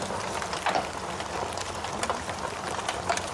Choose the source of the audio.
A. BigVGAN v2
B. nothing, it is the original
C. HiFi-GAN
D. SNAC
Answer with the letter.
B